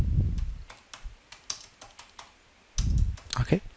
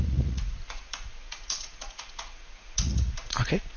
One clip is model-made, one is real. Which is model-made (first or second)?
second